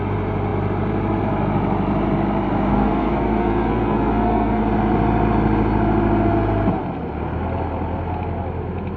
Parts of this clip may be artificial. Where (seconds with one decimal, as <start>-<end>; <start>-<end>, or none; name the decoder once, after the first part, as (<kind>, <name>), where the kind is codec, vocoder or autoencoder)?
2.7-4.6 (codec, SNAC)